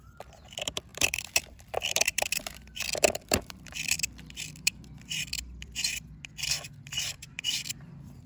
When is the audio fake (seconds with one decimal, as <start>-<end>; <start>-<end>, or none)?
0.0-8.3